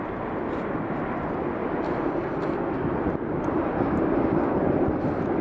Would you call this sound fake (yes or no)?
no